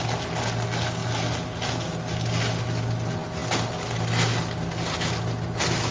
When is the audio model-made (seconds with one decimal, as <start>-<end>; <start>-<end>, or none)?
none